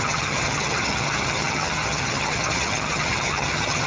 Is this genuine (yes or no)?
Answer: no